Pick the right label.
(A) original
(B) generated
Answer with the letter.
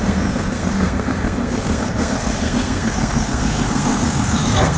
B